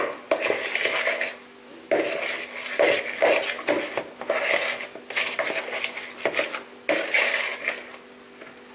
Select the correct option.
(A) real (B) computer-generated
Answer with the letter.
A